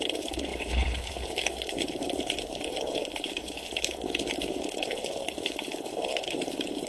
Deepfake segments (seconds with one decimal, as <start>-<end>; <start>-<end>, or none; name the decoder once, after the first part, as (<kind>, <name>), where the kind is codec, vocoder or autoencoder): 0.0-6.9 (codec, HILCodec)